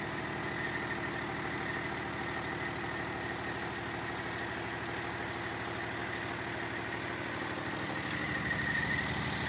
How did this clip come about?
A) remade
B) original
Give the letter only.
B